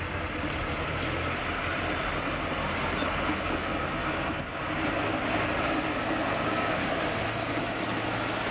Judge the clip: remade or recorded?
recorded